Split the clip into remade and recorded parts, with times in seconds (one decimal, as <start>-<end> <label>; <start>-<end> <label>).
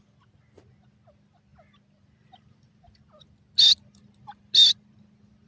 0.0-5.5 recorded